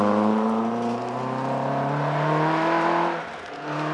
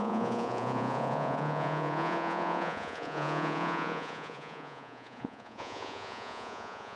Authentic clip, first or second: first